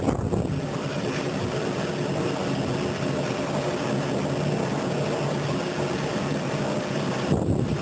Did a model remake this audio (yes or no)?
no